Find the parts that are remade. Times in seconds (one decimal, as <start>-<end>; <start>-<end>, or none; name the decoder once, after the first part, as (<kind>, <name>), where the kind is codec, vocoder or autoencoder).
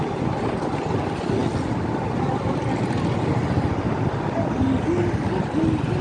none